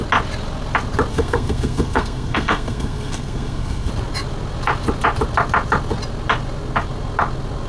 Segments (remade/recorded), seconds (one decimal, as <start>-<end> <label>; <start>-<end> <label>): 0.0-1.1 recorded; 1.1-3.9 remade; 3.9-7.7 recorded

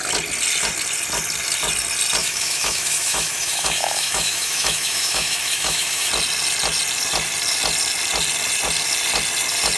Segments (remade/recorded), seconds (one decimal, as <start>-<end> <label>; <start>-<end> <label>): 0.0-2.2 recorded; 2.2-6.1 remade; 6.1-9.8 recorded

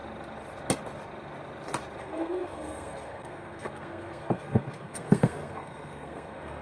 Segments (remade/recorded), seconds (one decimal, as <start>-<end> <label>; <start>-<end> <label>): 0.0-2.0 recorded; 2.0-6.6 remade

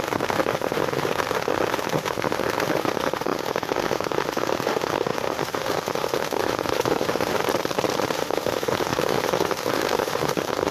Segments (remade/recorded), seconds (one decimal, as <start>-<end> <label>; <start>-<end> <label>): 0.0-7.4 remade; 7.4-8.1 recorded; 8.1-10.7 remade

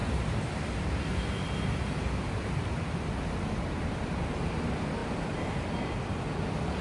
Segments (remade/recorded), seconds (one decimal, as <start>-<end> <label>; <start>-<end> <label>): 0.0-3.6 recorded; 3.6-6.8 remade

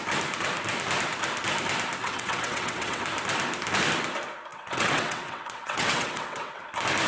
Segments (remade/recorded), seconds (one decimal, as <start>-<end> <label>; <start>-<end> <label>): 0.0-2.0 recorded; 2.0-3.0 remade; 3.0-4.5 recorded; 4.5-6.6 remade; 6.6-7.1 recorded

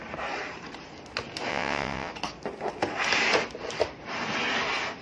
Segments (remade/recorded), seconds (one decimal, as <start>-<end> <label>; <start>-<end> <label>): 0.0-1.5 recorded; 1.5-2.1 remade; 2.1-5.0 recorded

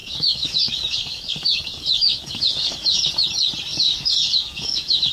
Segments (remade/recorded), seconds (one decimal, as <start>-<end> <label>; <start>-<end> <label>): 0.0-3.1 remade; 3.1-3.7 recorded; 3.7-5.1 remade